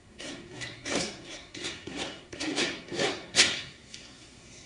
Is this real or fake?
fake